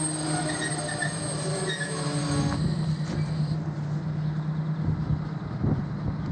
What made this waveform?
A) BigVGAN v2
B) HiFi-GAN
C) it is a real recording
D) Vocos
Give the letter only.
C